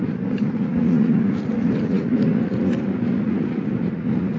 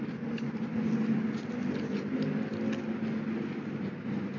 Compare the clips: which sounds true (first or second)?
second